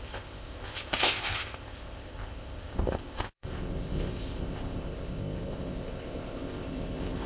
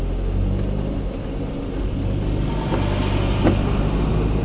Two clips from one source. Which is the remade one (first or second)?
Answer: first